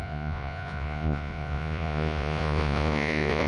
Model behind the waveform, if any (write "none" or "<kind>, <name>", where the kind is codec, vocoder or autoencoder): vocoder, Vocos